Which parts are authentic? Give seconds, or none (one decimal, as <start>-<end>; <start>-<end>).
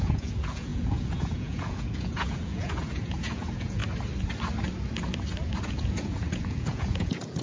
3.8-5.6